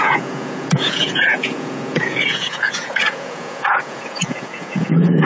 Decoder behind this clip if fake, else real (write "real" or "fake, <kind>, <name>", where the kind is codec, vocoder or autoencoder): fake, vocoder, Vocos